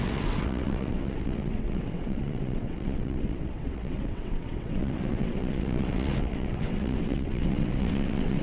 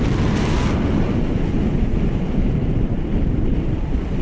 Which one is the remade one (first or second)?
first